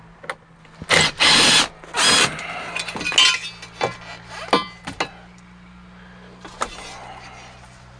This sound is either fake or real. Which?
real